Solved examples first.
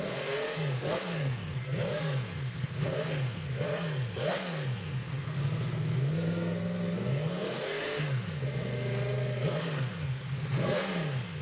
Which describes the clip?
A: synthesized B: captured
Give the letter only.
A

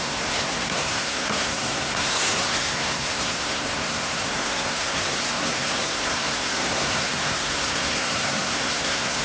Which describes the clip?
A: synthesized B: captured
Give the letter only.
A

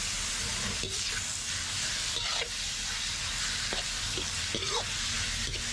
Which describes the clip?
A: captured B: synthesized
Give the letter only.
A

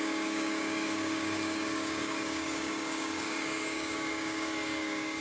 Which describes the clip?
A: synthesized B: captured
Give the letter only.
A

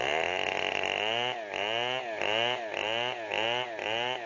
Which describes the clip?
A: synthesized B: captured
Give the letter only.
B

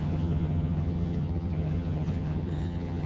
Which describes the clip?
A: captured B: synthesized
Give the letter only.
B